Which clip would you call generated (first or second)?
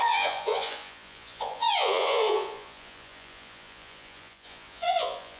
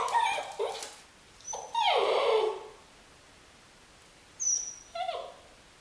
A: first